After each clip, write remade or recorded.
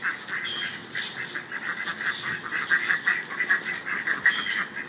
recorded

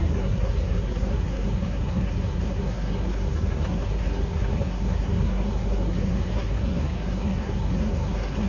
remade